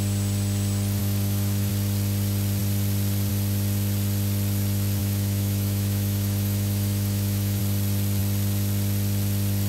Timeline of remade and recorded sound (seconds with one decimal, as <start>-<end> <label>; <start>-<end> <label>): 0.0-1.0 recorded; 1.0-1.7 remade; 1.7-5.0 recorded; 5.0-7.6 remade; 7.6-9.7 recorded